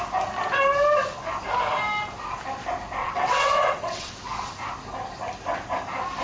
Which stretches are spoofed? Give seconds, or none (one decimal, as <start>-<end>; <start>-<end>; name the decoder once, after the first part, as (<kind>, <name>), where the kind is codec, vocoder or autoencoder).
3.0-4.1 (vocoder, WaveNeXt)